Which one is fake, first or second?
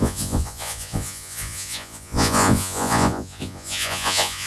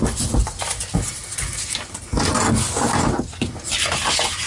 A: first